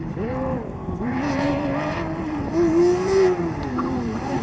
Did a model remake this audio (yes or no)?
yes